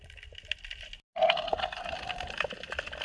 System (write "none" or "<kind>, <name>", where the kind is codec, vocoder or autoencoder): none